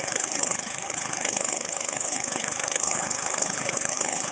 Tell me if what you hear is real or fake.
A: fake